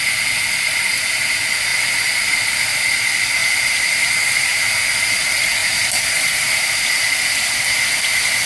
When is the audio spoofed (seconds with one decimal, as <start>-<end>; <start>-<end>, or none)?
1.7-2.2; 3.4-4.6; 5.6-6.8